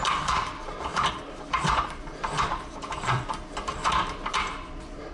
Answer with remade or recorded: recorded